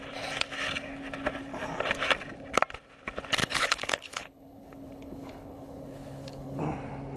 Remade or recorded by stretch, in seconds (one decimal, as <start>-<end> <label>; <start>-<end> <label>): 0.0-3.4 recorded; 3.4-6.6 remade; 6.6-7.2 recorded